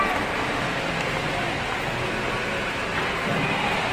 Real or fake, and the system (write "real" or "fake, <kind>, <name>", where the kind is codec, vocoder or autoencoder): real